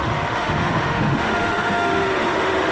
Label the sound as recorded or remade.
remade